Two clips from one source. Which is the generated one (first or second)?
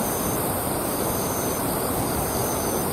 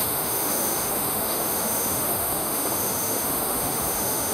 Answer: second